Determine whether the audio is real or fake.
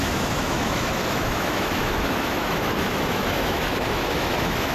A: fake